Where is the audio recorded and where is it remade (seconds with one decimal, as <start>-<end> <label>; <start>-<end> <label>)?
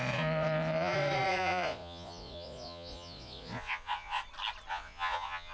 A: 0.0-4.2 remade; 4.2-4.7 recorded; 4.7-5.5 remade